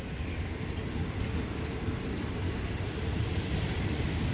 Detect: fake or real real